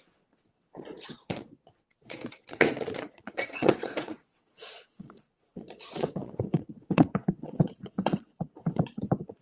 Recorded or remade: remade